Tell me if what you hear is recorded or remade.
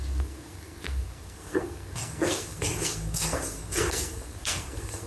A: remade